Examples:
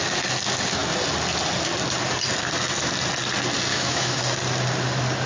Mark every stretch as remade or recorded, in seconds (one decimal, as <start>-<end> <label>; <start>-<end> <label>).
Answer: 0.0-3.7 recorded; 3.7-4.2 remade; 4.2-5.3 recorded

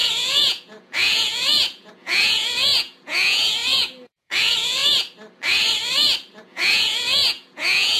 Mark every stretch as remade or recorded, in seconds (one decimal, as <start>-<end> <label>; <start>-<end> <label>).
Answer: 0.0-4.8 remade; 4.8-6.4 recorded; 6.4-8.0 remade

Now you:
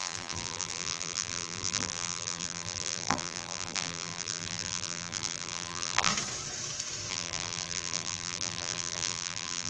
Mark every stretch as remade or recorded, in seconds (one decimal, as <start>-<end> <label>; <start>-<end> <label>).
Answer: 0.0-6.1 remade; 6.1-7.1 recorded; 7.1-9.7 remade